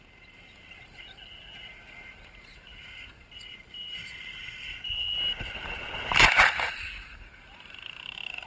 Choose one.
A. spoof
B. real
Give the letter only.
B